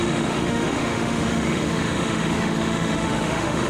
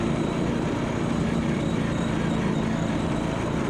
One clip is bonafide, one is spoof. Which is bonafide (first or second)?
second